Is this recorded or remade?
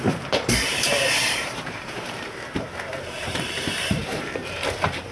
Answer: remade